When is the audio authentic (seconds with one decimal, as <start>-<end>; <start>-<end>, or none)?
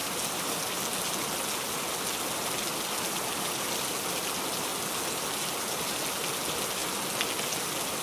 0.0-8.0